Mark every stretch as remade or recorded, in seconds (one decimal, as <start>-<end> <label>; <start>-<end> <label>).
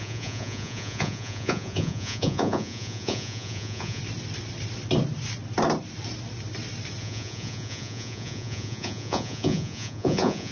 0.0-4.0 remade; 4.0-7.0 recorded; 7.0-10.5 remade